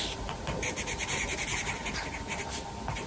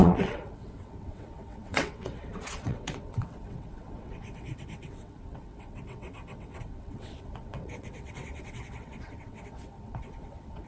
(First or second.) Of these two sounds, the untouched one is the first